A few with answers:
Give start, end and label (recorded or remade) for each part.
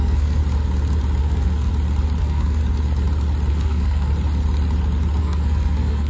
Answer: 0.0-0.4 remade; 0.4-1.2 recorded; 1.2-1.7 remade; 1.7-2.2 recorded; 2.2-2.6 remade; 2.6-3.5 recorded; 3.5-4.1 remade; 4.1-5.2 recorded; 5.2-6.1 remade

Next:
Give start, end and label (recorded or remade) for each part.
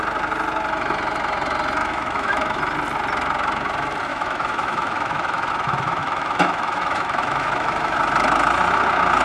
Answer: 0.0-1.8 recorded; 1.8-2.6 remade; 2.6-4.1 recorded; 4.1-5.5 remade; 5.5-6.0 recorded; 6.0-8.0 remade; 8.0-9.2 recorded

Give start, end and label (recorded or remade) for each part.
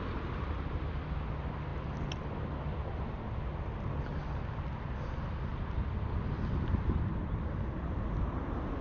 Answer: 0.0-8.8 recorded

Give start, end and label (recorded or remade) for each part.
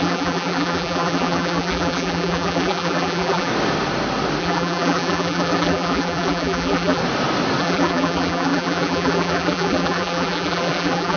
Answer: 0.0-3.5 remade; 3.5-4.4 recorded; 4.4-7.0 remade; 7.0-7.6 recorded; 7.6-11.2 remade